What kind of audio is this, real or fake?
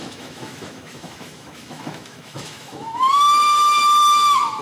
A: fake